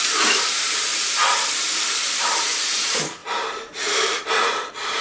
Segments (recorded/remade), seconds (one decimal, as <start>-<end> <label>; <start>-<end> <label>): 0.0-0.9 remade; 0.9-2.1 recorded; 2.1-5.0 remade